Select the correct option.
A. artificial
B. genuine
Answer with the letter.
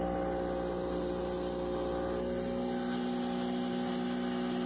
B